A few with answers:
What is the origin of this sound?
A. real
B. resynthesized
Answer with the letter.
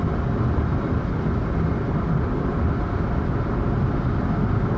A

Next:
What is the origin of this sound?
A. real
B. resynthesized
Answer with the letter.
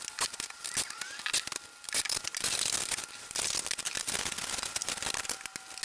A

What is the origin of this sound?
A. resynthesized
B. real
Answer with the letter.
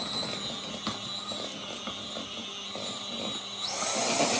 B